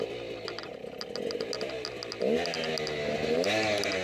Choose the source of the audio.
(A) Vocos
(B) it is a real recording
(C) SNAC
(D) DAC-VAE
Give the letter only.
B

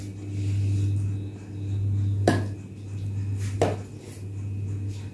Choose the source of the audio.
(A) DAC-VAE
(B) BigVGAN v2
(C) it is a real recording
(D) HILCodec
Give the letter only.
C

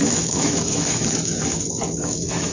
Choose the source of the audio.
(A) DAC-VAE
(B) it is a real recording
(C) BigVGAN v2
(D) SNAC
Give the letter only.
A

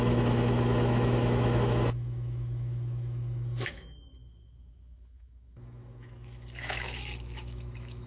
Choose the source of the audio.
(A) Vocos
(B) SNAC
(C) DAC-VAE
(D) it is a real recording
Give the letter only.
C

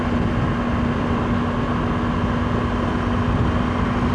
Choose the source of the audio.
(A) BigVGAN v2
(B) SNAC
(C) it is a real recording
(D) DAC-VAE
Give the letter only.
C